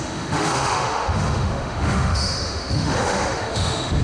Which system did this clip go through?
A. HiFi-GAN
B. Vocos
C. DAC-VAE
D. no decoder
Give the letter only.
C